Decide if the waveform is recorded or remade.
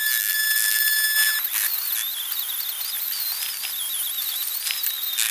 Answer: recorded